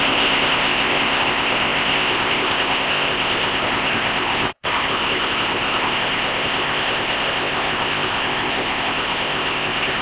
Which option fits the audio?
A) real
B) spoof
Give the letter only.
B